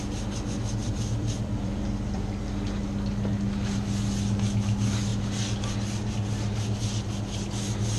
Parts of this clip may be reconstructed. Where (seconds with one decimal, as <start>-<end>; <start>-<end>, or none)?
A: 0.8-2.4